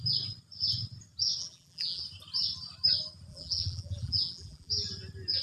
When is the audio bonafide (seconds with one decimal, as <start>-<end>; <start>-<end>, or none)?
0.0-1.4; 2.0-3.3; 4.7-5.4